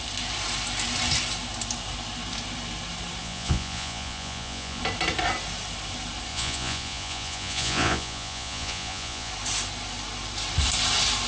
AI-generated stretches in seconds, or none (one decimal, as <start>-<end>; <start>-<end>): 3.2-4.8; 6.3-9.3